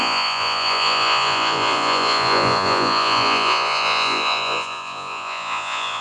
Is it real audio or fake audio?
fake